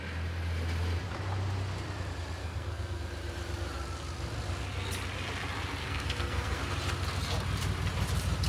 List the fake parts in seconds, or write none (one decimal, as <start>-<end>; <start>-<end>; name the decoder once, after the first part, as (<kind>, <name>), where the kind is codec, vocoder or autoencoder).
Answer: 2.4-3.0 (codec, SNAC); 5.8-6.6